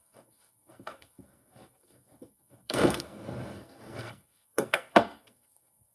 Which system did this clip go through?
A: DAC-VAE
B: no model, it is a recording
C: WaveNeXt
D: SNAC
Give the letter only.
D